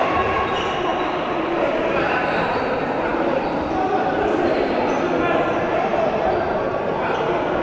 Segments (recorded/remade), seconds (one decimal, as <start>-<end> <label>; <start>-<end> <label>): 0.0-7.6 recorded

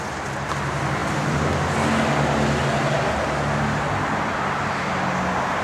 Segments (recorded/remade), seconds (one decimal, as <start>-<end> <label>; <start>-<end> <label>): 0.0-5.6 recorded

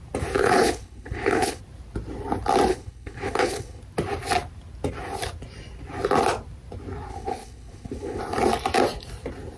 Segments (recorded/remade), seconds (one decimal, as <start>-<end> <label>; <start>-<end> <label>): 0.0-0.4 recorded; 0.4-1.6 remade; 1.6-2.7 recorded; 2.7-3.8 remade; 3.8-7.1 recorded; 7.1-8.2 remade; 8.2-9.6 recorded

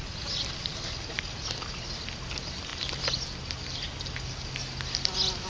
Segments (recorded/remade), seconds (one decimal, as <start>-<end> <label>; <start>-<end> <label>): 0.0-5.5 recorded

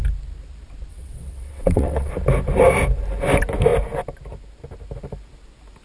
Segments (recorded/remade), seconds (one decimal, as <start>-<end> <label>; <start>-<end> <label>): 0.0-0.9 recorded; 0.9-2.1 remade; 2.1-5.8 recorded

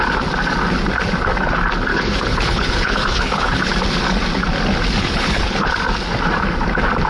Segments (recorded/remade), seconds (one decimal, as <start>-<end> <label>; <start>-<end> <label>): 0.0-1.9 recorded; 1.9-3.7 remade; 3.7-5.0 recorded; 5.0-5.7 remade; 5.7-7.1 recorded

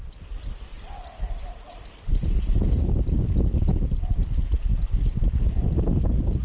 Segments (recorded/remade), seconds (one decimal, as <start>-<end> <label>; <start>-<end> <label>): 0.0-6.4 recorded

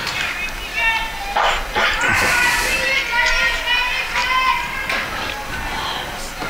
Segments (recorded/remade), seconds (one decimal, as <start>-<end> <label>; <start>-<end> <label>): 0.0-6.5 recorded